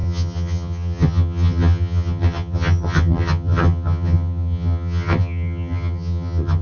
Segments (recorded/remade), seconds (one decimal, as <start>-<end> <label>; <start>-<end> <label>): 0.0-6.6 remade